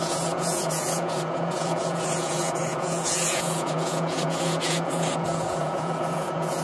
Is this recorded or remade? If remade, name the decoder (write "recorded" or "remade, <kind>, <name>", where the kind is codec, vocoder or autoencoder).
remade, vocoder, Vocos